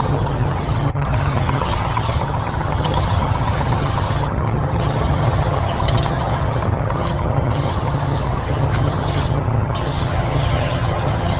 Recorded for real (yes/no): no